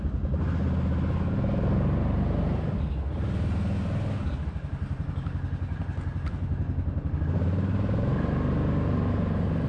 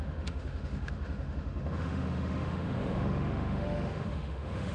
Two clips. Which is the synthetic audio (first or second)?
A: second